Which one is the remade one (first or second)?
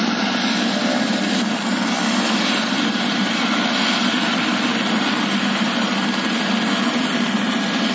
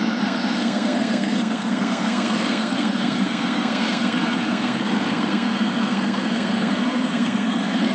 second